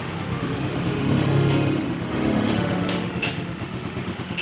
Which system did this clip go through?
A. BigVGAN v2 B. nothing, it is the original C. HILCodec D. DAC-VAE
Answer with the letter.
D